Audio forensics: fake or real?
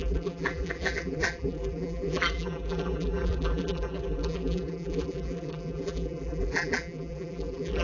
fake